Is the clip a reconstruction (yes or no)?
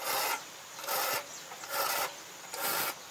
no